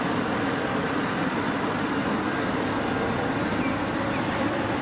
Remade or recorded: remade